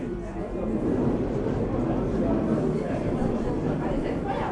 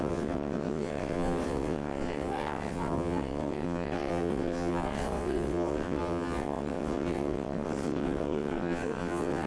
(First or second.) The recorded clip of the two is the first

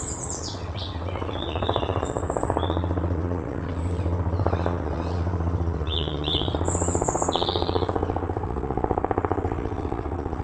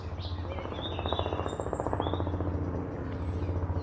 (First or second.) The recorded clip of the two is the second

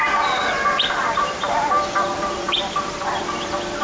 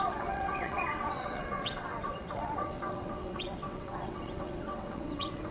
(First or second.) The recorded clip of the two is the first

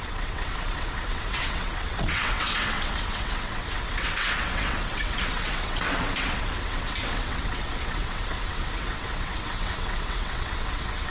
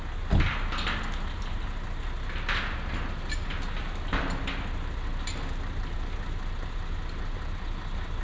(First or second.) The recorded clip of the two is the second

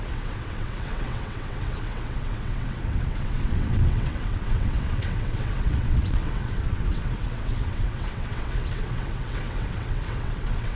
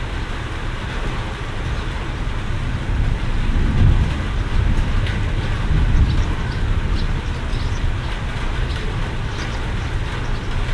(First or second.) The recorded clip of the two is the second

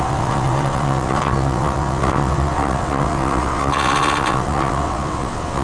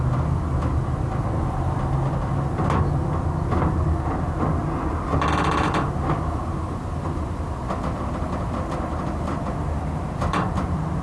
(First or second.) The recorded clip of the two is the second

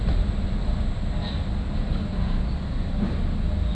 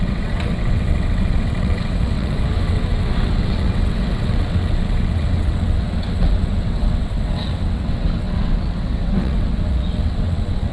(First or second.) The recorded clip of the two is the first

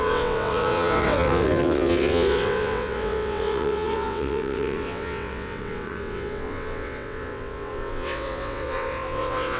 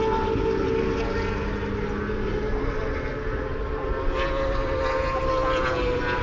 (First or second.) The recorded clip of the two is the second